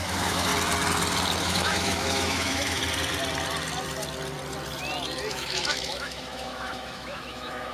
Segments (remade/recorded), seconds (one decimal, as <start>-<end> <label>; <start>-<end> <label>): 0.0-0.5 remade; 0.5-1.4 recorded; 1.4-2.8 remade; 2.8-5.3 recorded; 5.3-7.7 remade

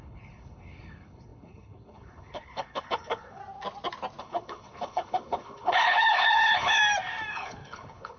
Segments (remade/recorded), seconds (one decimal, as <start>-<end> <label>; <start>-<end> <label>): 0.0-3.4 remade; 3.4-4.2 recorded; 4.2-6.8 remade; 6.8-7.3 recorded; 7.3-8.2 remade

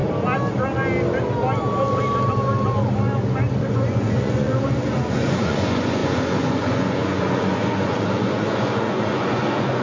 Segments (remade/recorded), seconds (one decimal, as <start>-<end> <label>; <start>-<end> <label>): 0.0-3.6 recorded; 3.6-4.5 remade; 4.5-5.1 recorded; 5.1-9.8 remade

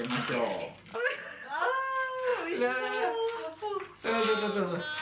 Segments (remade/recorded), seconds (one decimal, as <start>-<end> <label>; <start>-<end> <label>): 0.0-0.9 recorded; 0.9-1.6 remade; 1.6-5.0 recorded

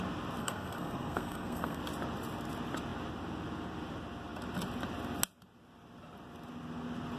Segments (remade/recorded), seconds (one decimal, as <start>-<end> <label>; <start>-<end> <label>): 0.0-0.4 recorded; 0.4-1.8 remade; 1.8-7.2 recorded

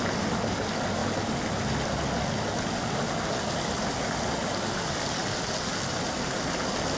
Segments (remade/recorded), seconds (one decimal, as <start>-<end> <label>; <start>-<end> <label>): 0.0-7.0 recorded